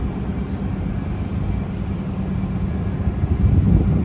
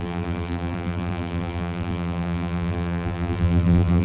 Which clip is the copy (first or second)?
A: second